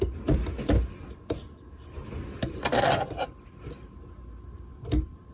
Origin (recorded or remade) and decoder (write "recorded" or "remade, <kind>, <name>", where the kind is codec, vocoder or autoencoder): recorded